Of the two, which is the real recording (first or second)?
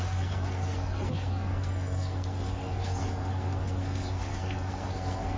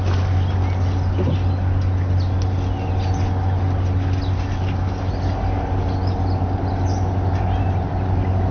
second